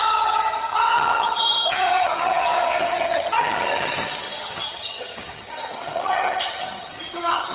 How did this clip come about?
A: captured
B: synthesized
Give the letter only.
B